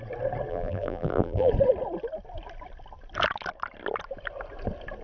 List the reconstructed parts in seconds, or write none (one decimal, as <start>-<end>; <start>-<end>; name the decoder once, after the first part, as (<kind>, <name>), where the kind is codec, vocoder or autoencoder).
0.5-1.5 (vocoder, BigVGAN v2)